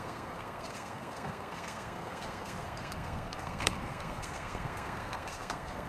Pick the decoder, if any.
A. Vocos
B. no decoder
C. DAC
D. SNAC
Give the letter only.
D